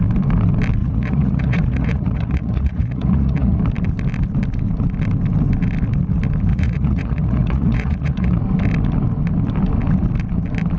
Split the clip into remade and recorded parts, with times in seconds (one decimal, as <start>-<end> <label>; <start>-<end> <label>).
0.0-0.8 recorded; 0.8-3.6 remade; 3.6-6.5 recorded; 6.5-8.4 remade; 8.4-10.8 recorded